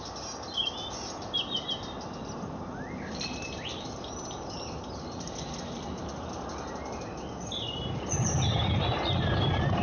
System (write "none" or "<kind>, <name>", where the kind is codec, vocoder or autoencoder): none